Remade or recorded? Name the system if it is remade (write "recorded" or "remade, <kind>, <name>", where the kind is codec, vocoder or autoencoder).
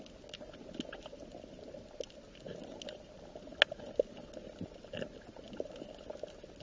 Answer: recorded